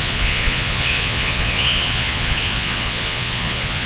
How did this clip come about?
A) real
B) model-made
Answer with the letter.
B